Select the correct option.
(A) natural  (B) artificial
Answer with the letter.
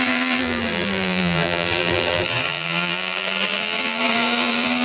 B